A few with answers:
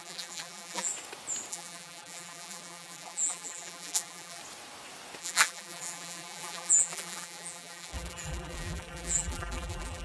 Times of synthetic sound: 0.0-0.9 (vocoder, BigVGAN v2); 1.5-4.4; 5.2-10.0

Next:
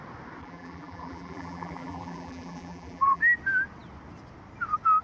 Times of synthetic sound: 0.4-3.2 (vocoder, BigVGAN v2)

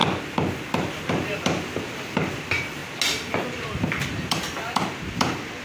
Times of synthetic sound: 1.1-2.8 (vocoder, BigVGAN v2); 3.4-5.6

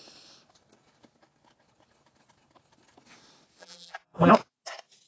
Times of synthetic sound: 3.6-4.3 (vocoder, BigVGAN v2)

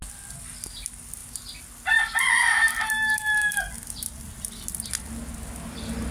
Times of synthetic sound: none

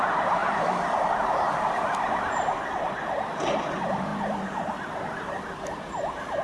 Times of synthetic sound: 0.0-0.4 (vocoder, BigVGAN v2); 1.0-6.4